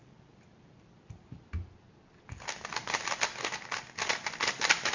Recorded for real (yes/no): yes